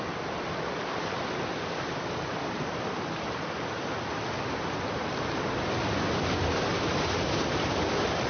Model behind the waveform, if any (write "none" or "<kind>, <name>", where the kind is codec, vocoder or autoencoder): none